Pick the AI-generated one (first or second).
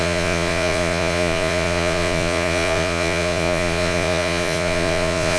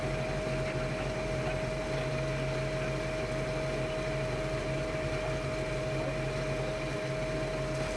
first